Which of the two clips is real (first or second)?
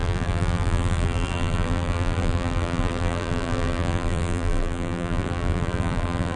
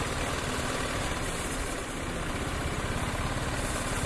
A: second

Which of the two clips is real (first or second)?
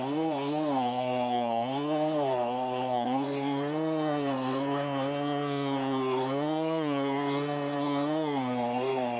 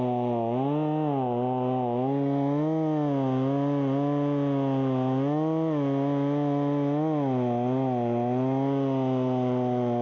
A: second